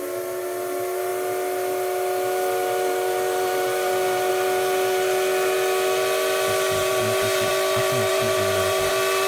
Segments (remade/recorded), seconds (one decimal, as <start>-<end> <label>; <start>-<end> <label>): 0.0-6.8 recorded; 6.8-7.5 remade; 7.5-8.1 recorded; 8.1-8.9 remade; 8.9-9.3 recorded